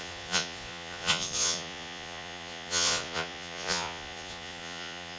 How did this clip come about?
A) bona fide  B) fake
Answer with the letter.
B